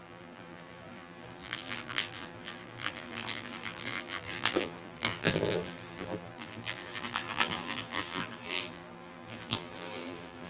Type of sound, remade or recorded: remade